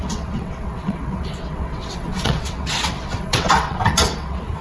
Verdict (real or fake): fake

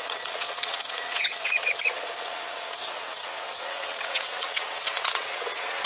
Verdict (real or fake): fake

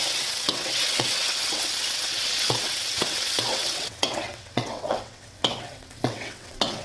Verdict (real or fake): fake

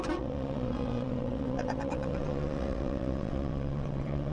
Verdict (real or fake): fake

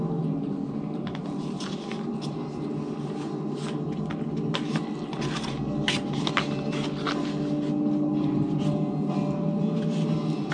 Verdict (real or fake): real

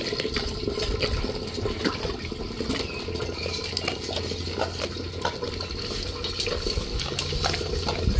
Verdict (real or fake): real